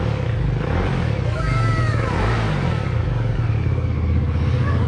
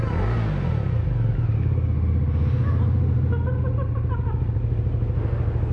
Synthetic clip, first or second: first